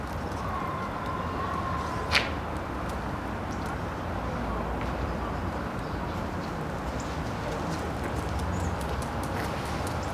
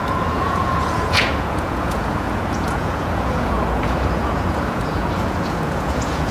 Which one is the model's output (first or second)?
second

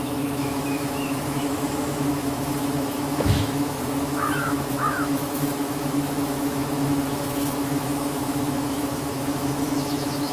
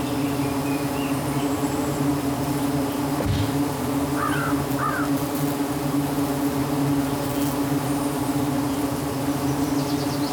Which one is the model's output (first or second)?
first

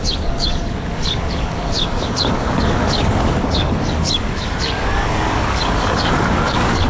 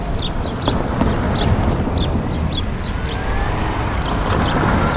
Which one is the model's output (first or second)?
first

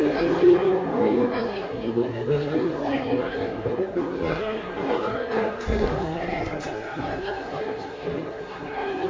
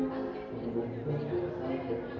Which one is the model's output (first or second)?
first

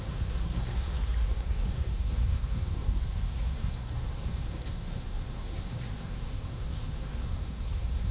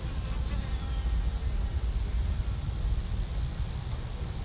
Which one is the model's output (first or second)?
first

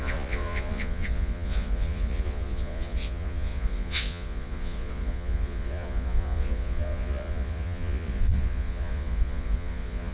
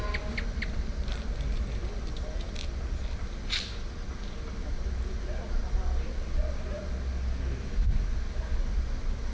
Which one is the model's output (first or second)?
first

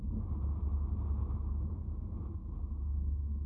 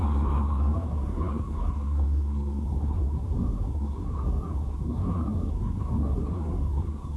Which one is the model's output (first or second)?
second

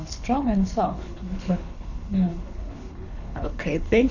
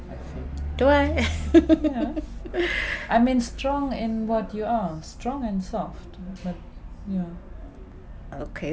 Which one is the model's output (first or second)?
first